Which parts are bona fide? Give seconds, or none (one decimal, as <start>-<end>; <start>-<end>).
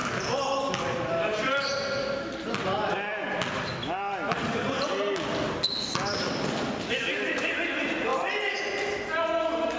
0.7-9.8